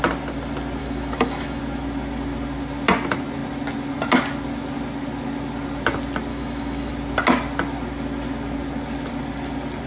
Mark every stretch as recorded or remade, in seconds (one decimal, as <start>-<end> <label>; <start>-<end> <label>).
0.0-0.8 recorded; 0.8-1.6 remade; 1.6-6.3 recorded; 6.3-6.9 remade; 6.9-9.9 recorded